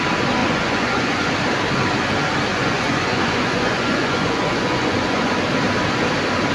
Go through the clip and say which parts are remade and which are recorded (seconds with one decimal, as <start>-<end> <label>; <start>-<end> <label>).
0.0-0.4 recorded; 0.4-1.3 remade; 1.3-2.5 recorded; 2.5-5.3 remade; 5.3-6.5 recorded